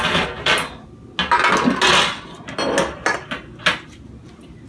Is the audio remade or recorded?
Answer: recorded